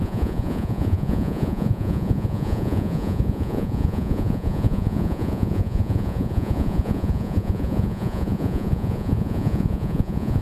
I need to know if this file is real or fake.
fake